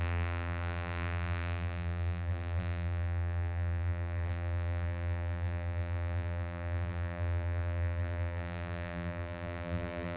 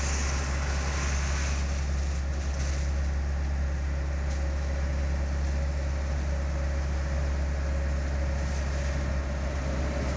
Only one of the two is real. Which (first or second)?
second